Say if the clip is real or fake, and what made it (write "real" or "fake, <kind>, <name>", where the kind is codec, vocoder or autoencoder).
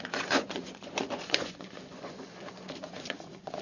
fake, vocoder, Vocos